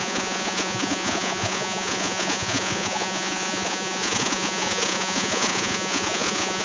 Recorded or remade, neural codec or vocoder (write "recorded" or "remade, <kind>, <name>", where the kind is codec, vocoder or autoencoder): remade, vocoder, Vocos